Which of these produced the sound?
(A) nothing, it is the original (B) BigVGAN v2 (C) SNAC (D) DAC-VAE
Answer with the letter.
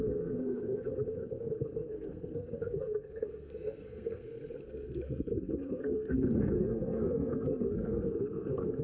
C